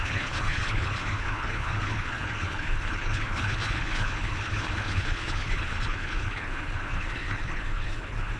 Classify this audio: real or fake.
fake